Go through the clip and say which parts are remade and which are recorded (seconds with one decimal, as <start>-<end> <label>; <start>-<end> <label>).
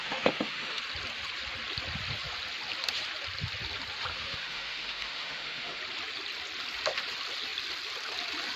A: 0.0-0.8 remade; 0.8-4.1 recorded; 4.1-5.8 remade; 5.8-8.6 recorded